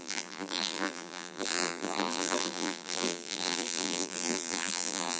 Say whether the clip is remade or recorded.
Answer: remade